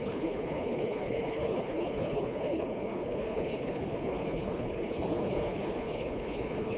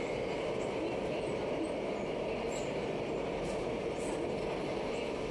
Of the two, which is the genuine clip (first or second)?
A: second